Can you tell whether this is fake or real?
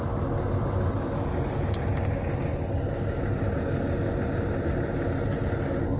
real